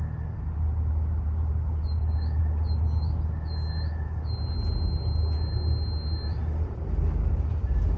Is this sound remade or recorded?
recorded